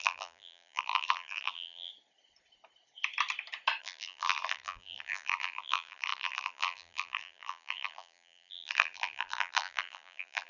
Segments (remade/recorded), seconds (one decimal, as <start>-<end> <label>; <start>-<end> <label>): 0.0-1.9 remade; 1.9-3.8 recorded; 3.8-10.5 remade